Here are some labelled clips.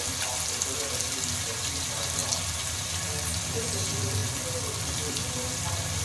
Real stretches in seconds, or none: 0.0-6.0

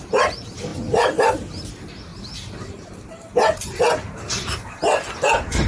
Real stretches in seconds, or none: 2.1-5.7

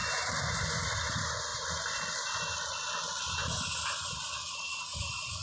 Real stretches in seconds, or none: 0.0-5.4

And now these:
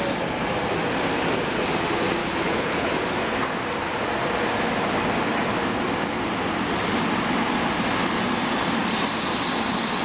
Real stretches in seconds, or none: 0.0-2.2; 2.9-10.0